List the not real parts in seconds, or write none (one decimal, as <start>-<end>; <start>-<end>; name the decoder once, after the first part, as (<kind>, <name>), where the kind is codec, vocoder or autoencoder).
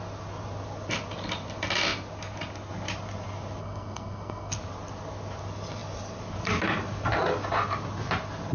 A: 3.6-4.5 (codec, SNAC)